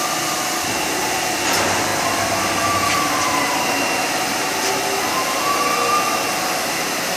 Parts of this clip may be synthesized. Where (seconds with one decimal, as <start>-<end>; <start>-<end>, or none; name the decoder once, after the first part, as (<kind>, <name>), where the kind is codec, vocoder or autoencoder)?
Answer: none